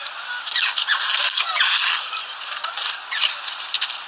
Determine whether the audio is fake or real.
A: real